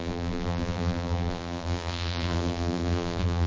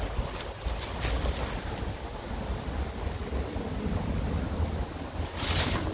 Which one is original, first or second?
second